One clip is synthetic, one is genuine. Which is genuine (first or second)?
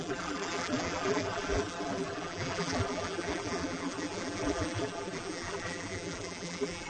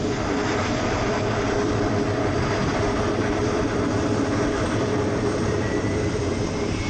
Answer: second